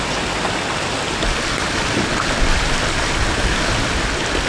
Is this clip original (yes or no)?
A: yes